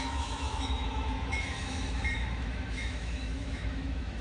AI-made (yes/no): yes